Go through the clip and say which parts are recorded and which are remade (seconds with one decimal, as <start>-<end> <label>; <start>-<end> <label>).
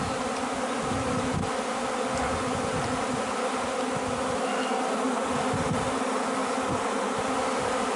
0.0-8.0 recorded